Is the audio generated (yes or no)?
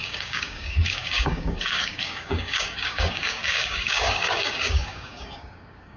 yes